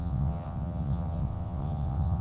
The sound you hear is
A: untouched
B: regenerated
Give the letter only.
B